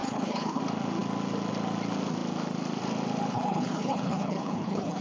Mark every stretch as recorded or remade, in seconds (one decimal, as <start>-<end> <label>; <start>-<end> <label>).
0.0-0.6 remade; 0.6-3.3 recorded; 3.3-5.0 remade